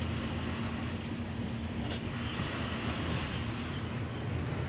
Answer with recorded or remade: recorded